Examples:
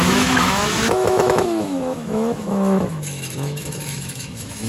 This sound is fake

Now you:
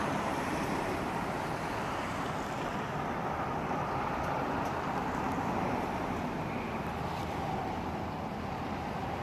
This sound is fake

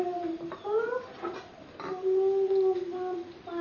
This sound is real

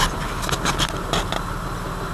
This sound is real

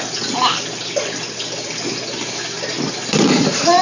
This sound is real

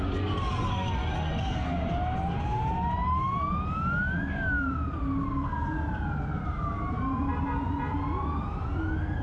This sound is real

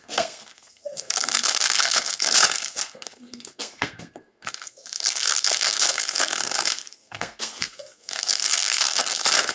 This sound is fake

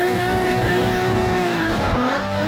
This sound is fake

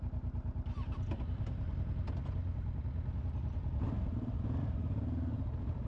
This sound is real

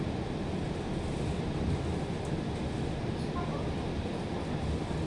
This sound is real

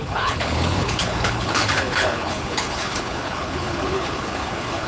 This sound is fake